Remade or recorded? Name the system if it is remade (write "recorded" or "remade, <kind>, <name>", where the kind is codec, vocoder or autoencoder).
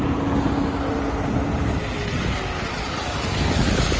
recorded